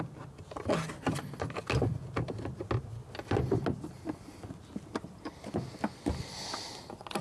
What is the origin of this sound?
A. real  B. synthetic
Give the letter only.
A